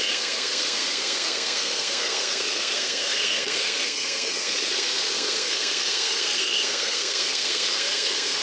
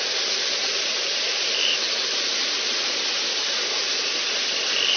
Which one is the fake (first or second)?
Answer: first